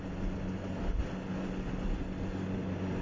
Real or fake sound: real